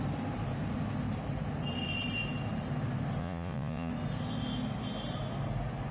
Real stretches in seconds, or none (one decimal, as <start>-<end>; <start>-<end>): 0.0-3.2; 3.9-5.9